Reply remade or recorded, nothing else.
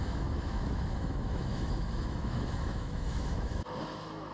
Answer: remade